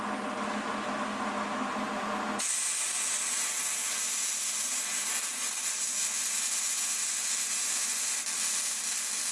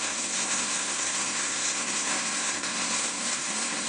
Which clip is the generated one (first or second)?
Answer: second